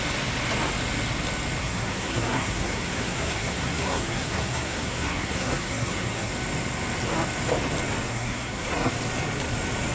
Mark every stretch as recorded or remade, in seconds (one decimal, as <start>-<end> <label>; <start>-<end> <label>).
0.0-1.6 recorded; 1.6-6.3 remade; 6.3-8.1 recorded; 8.1-8.9 remade; 8.9-9.9 recorded